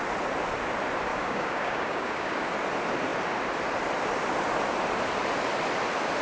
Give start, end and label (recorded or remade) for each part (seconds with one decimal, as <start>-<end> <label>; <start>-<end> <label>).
0.0-1.1 recorded; 1.1-2.5 remade; 2.5-6.2 recorded